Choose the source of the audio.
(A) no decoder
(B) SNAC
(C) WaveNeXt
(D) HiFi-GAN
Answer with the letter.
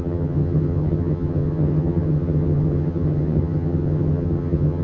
D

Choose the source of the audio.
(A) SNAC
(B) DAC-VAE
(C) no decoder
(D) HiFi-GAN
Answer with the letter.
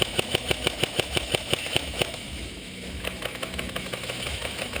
B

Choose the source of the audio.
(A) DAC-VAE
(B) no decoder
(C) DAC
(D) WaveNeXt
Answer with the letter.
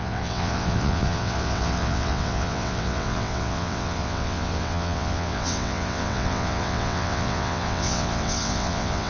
D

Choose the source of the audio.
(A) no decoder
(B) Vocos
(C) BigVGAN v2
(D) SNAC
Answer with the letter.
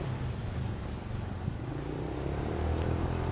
A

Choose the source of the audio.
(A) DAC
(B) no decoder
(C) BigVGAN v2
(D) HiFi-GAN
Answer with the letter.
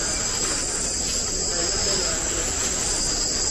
B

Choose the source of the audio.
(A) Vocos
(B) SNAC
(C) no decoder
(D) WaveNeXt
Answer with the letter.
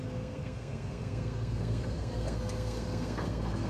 B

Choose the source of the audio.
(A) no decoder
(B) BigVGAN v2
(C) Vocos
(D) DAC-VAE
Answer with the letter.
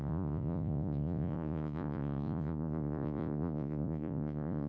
C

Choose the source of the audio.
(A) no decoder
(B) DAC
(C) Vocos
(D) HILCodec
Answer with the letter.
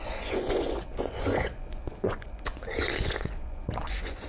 C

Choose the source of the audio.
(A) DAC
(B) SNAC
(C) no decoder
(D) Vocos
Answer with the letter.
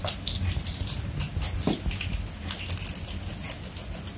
C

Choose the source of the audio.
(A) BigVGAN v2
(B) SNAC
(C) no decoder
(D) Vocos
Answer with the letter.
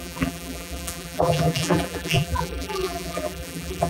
A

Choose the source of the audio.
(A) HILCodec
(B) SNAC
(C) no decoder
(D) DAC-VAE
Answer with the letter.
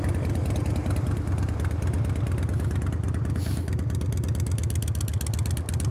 C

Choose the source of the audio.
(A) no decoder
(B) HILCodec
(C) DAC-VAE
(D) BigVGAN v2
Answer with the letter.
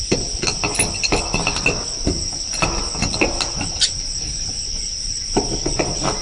A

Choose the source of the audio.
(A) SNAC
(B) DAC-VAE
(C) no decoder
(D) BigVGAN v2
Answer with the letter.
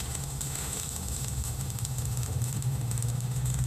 B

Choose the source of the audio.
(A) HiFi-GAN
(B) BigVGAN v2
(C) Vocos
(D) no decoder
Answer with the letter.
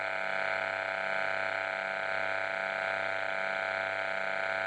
D